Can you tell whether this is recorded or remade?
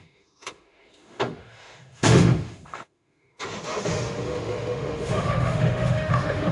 remade